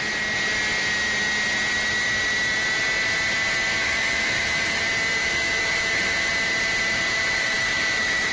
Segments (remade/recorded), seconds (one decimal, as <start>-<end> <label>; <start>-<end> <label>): 0.0-3.8 recorded; 3.8-4.8 remade; 4.8-5.2 recorded; 5.2-6.3 remade; 6.3-7.1 recorded; 7.1-8.3 remade